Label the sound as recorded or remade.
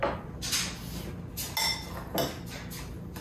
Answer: recorded